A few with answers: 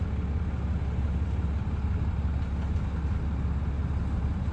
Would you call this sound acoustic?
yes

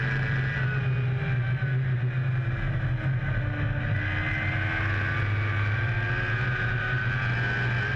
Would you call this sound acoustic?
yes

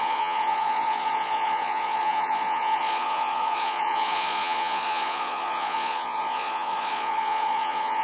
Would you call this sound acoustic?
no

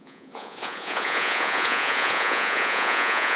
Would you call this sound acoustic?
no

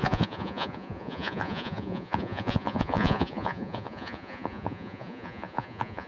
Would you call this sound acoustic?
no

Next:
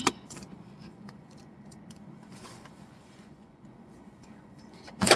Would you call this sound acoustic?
no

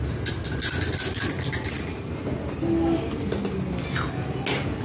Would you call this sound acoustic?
yes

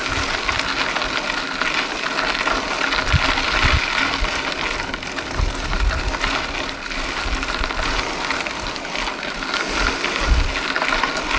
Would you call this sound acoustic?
yes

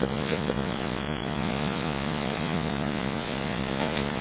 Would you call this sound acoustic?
no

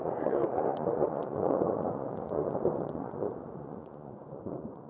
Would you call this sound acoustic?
no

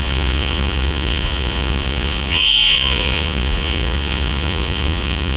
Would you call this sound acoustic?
no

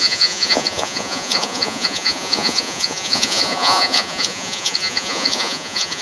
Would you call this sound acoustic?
no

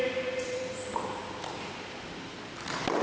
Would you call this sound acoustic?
yes